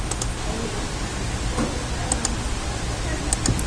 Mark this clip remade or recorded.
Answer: recorded